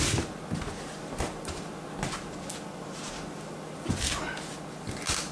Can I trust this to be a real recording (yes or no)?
yes